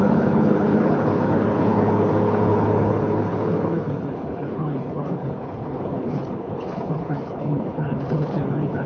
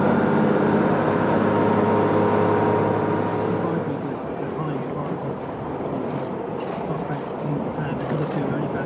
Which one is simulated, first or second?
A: first